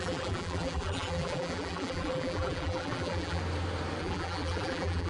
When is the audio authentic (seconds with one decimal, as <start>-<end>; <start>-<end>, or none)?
3.4-4.0